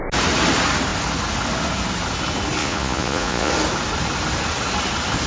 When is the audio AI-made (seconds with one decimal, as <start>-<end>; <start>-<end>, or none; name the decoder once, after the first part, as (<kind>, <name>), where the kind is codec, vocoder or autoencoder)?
2.6-3.5 (vocoder, Vocos)